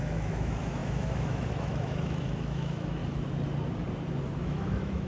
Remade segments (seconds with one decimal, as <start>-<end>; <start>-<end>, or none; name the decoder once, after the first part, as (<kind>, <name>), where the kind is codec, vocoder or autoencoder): 0.0-3.0 (autoencoder, DAC-VAE); 4.4-5.1